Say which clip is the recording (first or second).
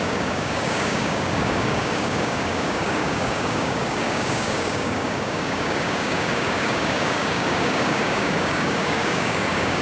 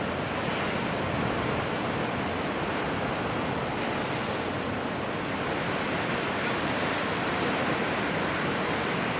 second